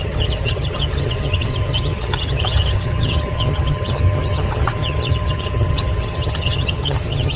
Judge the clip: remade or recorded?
remade